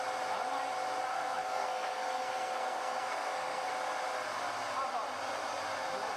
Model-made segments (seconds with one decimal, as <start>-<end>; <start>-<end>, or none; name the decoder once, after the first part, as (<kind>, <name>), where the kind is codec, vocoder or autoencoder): 1.1-3.7 (codec, SNAC)